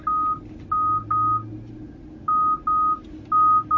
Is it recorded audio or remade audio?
recorded